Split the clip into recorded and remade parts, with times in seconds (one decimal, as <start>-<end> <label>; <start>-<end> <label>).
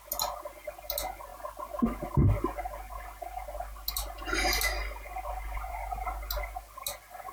0.0-7.3 recorded